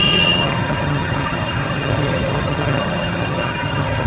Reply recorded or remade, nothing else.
remade